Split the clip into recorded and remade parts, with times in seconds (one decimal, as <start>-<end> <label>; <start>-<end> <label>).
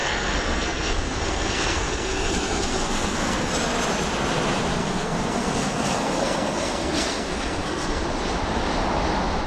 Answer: 0.0-3.5 remade; 3.5-4.8 recorded; 4.8-8.0 remade; 8.0-9.5 recorded